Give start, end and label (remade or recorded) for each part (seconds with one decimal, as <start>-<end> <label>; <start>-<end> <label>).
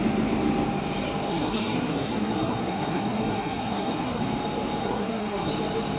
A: 0.0-1.3 recorded; 1.3-4.2 remade; 4.2-4.8 recorded; 4.8-5.5 remade; 5.5-6.0 recorded